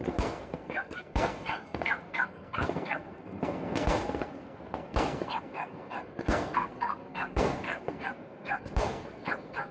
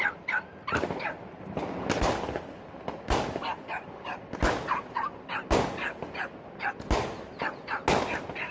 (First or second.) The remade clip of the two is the first